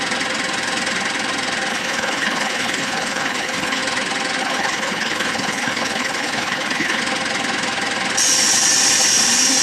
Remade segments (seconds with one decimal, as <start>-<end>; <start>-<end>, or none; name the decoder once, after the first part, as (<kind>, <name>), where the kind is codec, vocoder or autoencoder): 1.7-3.8 (codec, HILCodec); 4.4-7.0